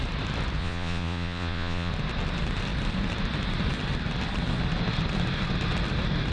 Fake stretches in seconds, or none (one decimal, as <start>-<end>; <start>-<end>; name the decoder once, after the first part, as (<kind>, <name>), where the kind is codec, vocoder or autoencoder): 0.6-1.9 (vocoder, Vocos)